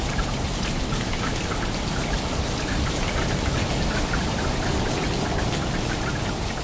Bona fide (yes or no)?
yes